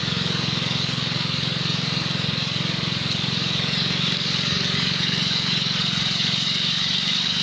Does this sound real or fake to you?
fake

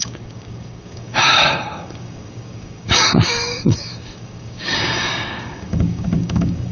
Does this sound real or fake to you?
fake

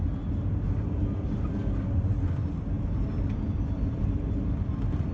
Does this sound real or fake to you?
real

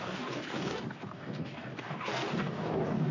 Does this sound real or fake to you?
fake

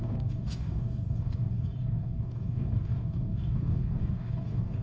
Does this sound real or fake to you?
fake